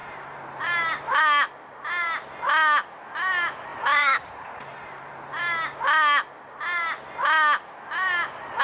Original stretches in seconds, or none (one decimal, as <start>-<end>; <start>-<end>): 1.2-3.7; 5.3-8.6